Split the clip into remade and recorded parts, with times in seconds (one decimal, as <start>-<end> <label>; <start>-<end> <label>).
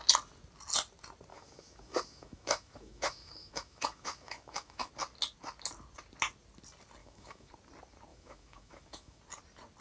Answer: 0.0-1.3 recorded; 1.3-4.9 remade; 4.9-7.0 recorded; 7.0-7.5 remade; 7.5-8.1 recorded; 8.1-9.2 remade; 9.2-9.8 recorded